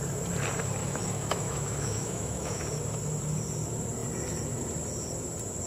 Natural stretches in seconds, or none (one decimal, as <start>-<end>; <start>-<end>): 0.0-0.8; 2.6-5.7